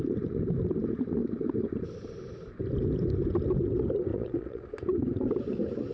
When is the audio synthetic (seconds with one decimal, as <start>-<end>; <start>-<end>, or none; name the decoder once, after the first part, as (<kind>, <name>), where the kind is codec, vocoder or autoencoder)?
4.1-4.6 (vocoder, WaveNeXt)